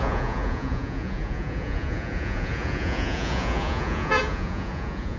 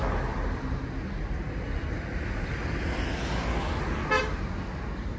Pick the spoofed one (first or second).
first